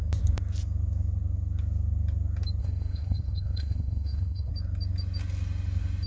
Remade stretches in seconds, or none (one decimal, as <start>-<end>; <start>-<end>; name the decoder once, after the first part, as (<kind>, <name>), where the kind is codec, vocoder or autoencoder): 2.6-4.5 (codec, SNAC)